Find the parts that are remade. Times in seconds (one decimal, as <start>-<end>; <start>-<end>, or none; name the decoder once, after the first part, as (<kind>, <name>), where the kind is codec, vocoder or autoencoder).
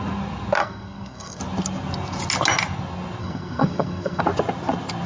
0.6-1.4 (codec, SNAC); 3.2-4.2